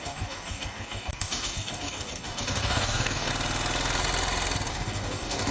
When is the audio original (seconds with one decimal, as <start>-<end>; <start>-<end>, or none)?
3.3-4.7